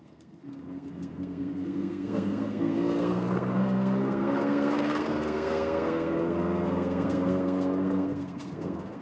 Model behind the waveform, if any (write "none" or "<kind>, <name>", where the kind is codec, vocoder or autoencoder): codec, SNAC